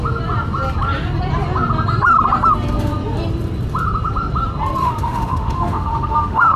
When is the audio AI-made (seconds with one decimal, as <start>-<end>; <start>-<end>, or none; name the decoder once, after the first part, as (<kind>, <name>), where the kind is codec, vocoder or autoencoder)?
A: 4.8-6.6 (autoencoder, DAC-VAE)